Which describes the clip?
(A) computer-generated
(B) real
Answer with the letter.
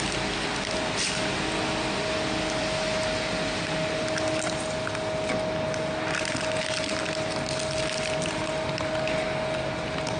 B